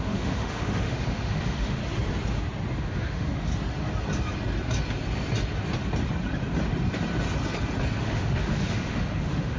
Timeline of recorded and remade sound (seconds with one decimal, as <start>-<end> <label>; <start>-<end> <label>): 0.0-1.8 remade; 1.8-2.8 recorded; 2.8-3.5 remade; 3.5-8.0 recorded; 8.0-9.6 remade

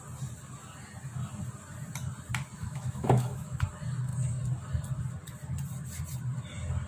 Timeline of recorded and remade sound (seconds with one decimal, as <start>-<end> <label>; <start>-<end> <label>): 0.0-2.6 recorded; 2.6-3.6 remade; 3.6-6.9 recorded

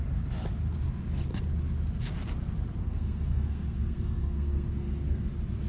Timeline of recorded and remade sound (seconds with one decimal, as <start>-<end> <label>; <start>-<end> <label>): 0.0-2.8 recorded; 2.8-5.3 remade; 5.3-5.7 recorded

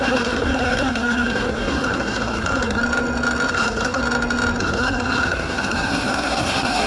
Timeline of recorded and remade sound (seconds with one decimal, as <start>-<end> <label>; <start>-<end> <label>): 0.0-2.8 remade; 2.8-3.5 recorded; 3.5-4.0 remade; 4.0-4.6 recorded; 4.6-6.9 remade